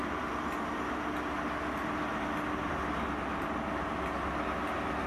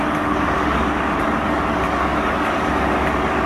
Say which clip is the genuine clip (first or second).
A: first